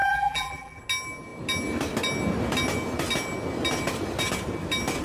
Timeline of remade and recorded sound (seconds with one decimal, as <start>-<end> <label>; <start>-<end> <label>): 0.0-0.8 remade; 0.8-5.0 recorded